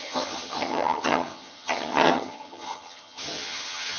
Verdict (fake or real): fake